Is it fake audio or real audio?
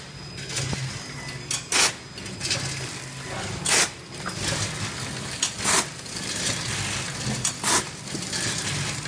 real